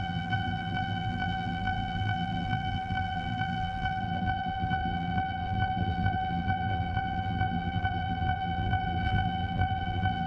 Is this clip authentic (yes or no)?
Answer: no